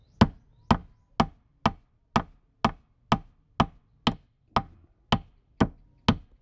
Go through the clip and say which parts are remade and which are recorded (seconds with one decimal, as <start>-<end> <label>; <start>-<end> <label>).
0.0-6.4 recorded